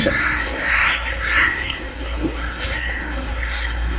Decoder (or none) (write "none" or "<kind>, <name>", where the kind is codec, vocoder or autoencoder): codec, SNAC